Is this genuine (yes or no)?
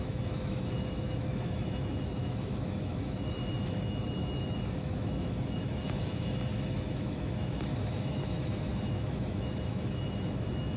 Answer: no